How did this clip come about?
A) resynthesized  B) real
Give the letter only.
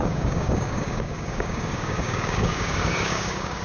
A